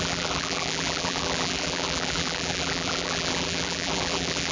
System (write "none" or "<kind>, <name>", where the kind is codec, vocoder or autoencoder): vocoder, BigVGAN v2